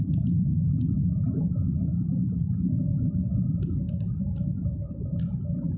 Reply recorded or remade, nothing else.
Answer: remade